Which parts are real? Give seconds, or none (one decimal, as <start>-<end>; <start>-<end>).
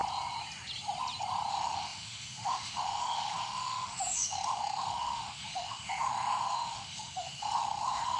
0.0-1.5